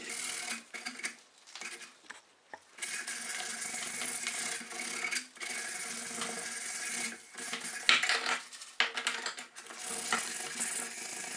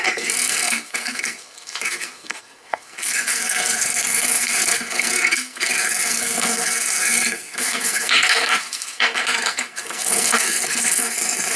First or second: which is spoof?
second